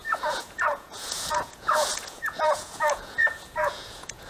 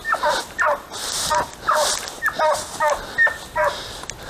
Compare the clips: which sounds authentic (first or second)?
second